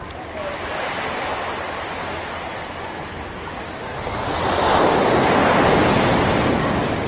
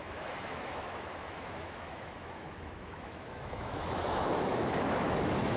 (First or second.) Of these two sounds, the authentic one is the first